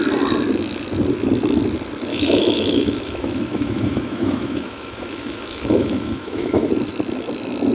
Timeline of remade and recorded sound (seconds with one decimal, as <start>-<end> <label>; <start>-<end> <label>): 0.0-2.1 recorded; 2.1-6.7 remade; 6.7-7.7 recorded